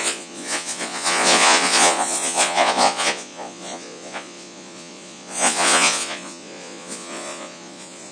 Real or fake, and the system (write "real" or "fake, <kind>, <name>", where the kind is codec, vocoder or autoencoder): fake, vocoder, Vocos